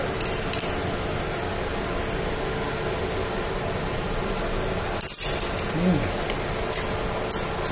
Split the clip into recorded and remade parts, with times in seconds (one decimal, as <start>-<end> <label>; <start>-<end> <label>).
0.0-7.7 recorded